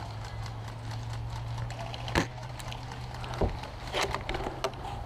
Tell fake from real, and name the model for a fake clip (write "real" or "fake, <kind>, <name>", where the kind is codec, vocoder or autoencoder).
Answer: real